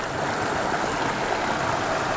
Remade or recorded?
recorded